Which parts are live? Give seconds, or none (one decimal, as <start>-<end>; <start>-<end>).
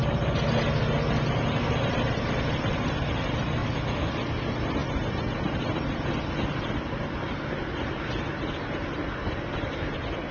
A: 0.0-3.6; 4.1-10.3